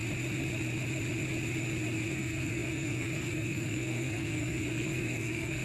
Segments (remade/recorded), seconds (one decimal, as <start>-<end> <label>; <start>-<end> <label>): 0.0-2.1 recorded; 2.1-5.6 remade